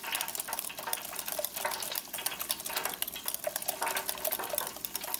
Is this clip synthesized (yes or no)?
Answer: no